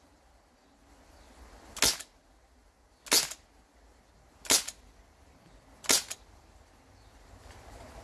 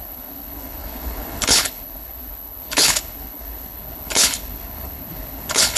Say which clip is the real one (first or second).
first